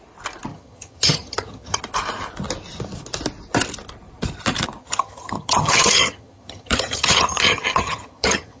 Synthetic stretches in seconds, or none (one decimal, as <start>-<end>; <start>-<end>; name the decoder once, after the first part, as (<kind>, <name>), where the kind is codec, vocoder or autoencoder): 0.5-1.8 (vocoder, HiFi-GAN); 4.8-8.6